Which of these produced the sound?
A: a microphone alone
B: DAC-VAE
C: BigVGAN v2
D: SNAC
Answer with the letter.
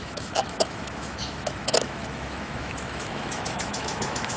B